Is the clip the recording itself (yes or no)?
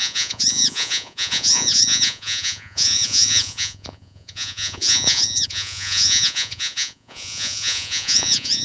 no